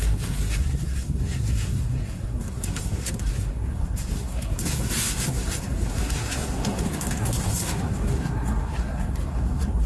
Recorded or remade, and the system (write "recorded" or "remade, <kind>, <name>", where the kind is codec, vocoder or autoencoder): remade, codec, SNAC